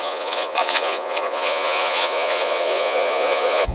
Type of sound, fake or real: fake